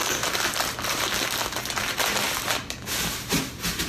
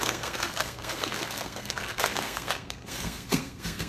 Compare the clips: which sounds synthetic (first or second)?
second